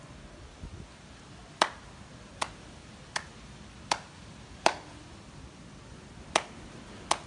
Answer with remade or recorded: recorded